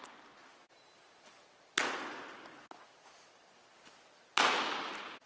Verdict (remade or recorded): recorded